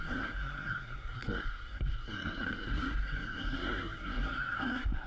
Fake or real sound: fake